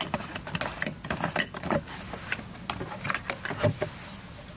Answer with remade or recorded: recorded